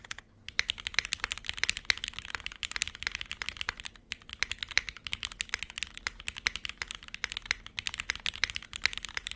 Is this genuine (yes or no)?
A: yes